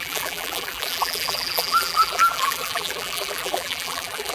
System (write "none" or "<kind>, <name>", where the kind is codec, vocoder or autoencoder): vocoder, BigVGAN v2